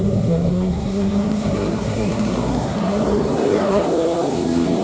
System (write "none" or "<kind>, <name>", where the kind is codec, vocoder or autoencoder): codec, SNAC